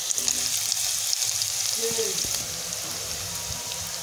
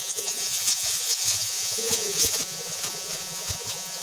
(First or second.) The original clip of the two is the first